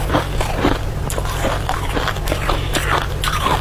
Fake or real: fake